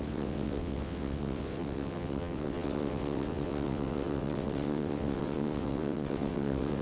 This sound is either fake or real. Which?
fake